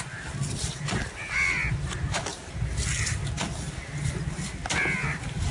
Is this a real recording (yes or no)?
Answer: yes